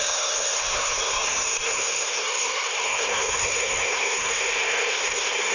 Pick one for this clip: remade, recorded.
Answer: remade